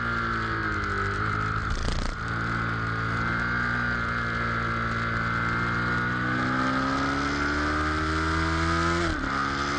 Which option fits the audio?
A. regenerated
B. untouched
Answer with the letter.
B